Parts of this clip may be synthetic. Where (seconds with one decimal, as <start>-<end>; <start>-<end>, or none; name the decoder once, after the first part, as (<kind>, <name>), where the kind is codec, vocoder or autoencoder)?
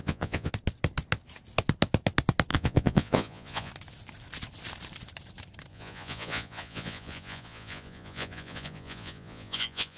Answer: 0.0-0.5 (vocoder, Vocos); 2.5-3.7; 5.7-10.0